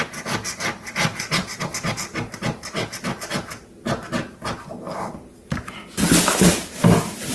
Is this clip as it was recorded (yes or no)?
yes